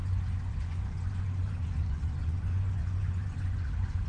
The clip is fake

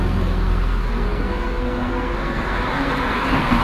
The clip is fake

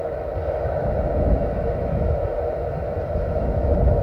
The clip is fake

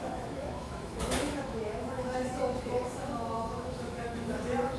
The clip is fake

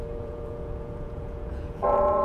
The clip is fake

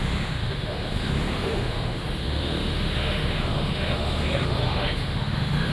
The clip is fake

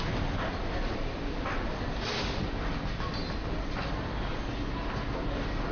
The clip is real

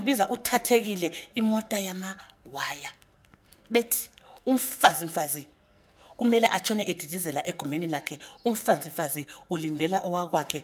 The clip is fake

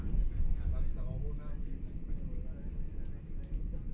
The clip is real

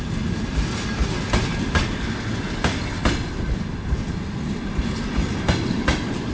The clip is real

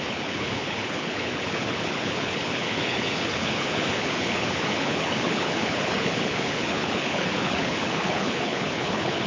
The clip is fake